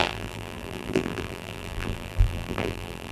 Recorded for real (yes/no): no